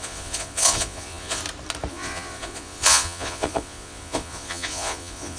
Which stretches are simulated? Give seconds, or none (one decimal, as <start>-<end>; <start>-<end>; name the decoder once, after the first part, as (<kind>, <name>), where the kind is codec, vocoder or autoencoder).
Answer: 0.0-1.4 (vocoder, Vocos); 1.9-5.4